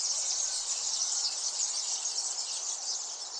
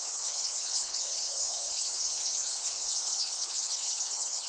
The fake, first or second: second